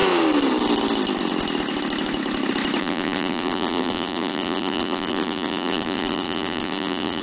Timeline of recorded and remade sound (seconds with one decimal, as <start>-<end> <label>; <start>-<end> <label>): 0.0-2.8 recorded; 2.8-7.2 remade

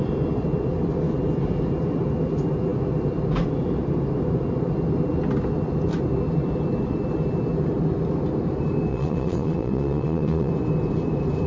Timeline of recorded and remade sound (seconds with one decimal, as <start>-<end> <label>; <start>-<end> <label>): 0.0-8.9 recorded; 8.9-10.5 remade; 10.5-11.5 recorded

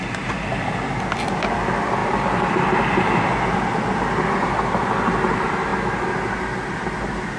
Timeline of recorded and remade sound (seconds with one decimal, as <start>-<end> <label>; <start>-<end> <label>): 0.0-7.4 recorded